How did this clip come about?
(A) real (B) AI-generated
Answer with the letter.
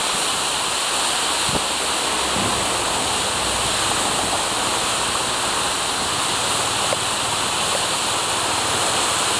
A